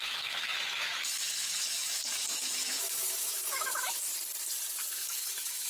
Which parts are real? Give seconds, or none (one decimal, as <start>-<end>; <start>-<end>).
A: 4.1-4.9